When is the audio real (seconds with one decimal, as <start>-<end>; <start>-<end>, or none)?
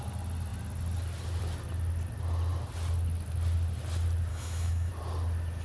0.0-4.3; 4.9-5.6